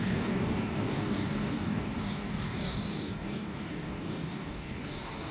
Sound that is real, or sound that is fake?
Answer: fake